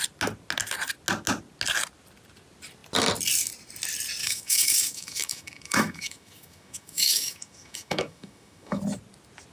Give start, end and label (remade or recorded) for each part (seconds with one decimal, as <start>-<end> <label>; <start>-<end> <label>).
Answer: 0.0-4.2 recorded; 4.2-8.8 remade; 8.8-9.5 recorded